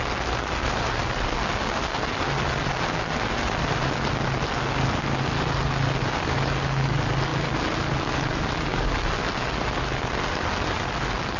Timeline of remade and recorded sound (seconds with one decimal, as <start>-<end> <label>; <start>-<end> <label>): 0.0-11.4 recorded